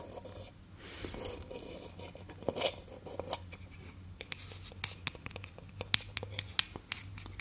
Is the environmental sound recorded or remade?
recorded